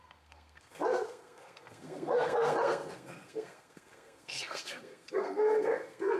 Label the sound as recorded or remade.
remade